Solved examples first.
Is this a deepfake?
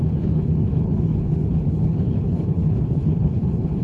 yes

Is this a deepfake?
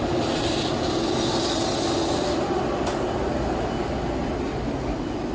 no